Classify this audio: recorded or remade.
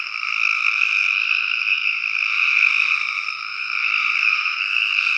remade